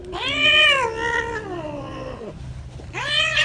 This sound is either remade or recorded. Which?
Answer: recorded